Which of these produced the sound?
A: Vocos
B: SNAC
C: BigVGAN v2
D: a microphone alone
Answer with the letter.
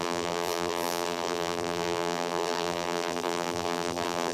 C